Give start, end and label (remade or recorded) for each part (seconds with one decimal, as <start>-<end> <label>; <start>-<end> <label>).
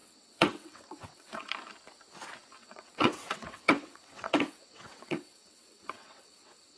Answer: 0.0-1.5 remade; 1.5-2.6 recorded; 2.6-6.8 remade